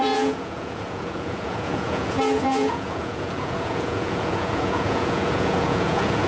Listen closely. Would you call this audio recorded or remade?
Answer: remade